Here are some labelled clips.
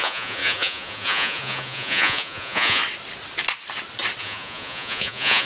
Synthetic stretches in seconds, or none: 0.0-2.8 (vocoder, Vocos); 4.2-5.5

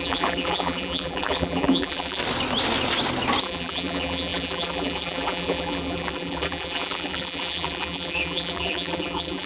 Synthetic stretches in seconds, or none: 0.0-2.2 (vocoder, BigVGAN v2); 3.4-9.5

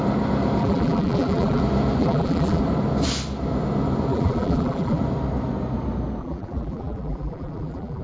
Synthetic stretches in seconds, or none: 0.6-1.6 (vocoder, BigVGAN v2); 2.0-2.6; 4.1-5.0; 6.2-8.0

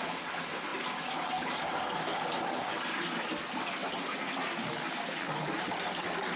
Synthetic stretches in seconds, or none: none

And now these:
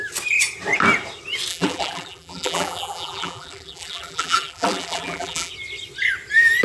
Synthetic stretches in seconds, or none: 1.5-5.5 (vocoder, BigVGAN v2)

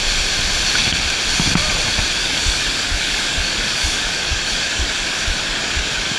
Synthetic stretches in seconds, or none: 2.2-6.2 (codec, DAC)

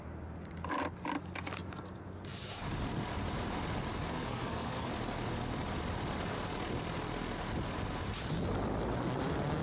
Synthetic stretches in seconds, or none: 4.1-4.9 (codec, SNAC)

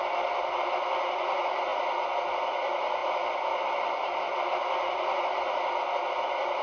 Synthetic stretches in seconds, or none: none